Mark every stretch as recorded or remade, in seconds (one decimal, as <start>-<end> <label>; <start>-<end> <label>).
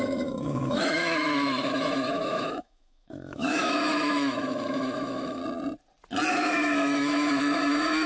0.0-5.4 remade; 5.4-6.3 recorded; 6.3-8.1 remade